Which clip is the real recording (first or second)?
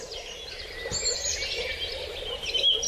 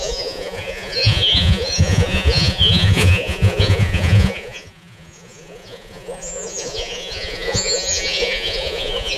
first